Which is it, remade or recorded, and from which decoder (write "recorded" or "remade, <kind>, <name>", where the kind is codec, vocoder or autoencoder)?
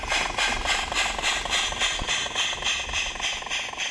recorded